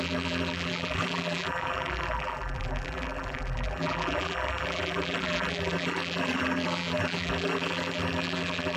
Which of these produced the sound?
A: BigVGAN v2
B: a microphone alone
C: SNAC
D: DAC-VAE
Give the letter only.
A